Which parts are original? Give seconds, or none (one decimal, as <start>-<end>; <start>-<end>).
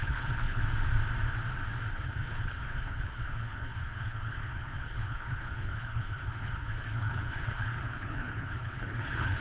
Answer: 0.6-1.9